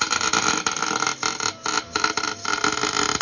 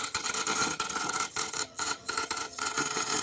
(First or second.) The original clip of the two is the first